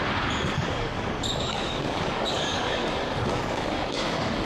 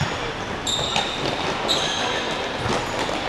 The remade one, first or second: first